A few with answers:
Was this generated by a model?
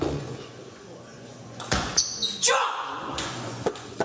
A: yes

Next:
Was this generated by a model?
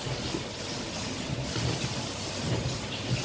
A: no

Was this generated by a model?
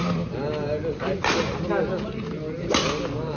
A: no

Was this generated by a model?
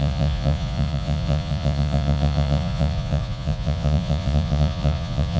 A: yes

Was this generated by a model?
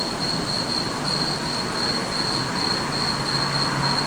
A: no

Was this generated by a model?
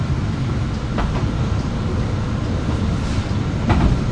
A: no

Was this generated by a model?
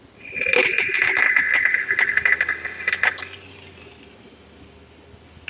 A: no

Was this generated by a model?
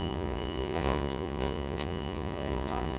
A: yes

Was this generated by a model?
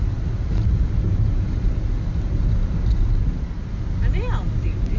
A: no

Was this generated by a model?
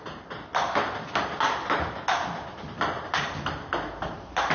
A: no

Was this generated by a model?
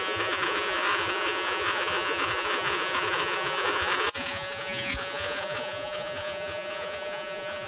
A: yes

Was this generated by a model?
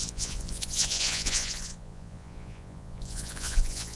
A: yes